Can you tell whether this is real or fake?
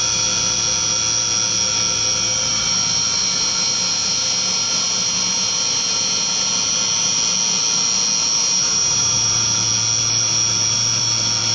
real